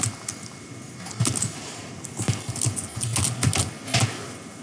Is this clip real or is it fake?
real